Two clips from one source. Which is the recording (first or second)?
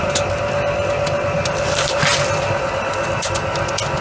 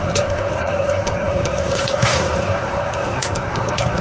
first